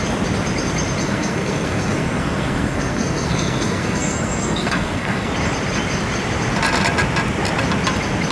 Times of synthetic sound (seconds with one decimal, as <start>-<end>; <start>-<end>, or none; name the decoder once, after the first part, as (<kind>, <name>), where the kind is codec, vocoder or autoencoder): 1.0-5.3 (codec, SNAC)